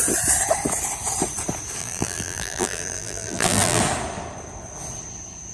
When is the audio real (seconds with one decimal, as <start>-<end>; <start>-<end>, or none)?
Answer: 0.0-1.8; 3.8-5.5